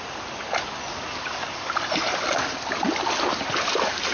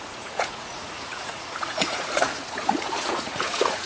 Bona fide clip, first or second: first